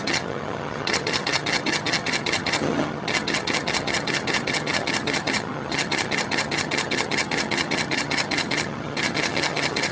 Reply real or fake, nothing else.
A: fake